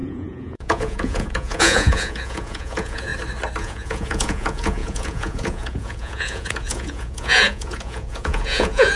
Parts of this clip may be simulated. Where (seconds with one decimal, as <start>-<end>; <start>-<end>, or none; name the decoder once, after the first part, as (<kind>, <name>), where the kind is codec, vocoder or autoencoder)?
0.0-3.1 (vocoder, Vocos); 3.6-9.0